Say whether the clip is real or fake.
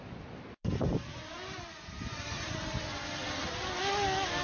real